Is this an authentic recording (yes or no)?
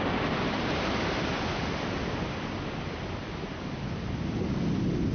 yes